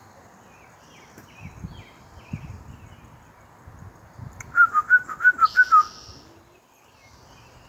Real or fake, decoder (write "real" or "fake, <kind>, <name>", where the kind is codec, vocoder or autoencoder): real